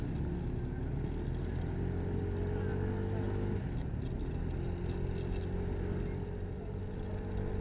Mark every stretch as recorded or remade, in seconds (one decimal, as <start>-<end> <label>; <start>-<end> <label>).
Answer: 0.0-7.6 recorded